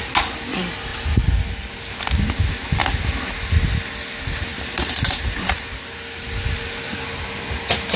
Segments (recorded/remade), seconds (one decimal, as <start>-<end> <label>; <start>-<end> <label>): 0.0-4.5 recorded; 4.5-5.4 remade; 5.4-8.0 recorded